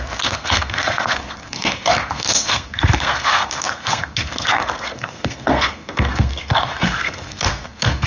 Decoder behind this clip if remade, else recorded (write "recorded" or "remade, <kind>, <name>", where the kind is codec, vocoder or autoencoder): remade, codec, SNAC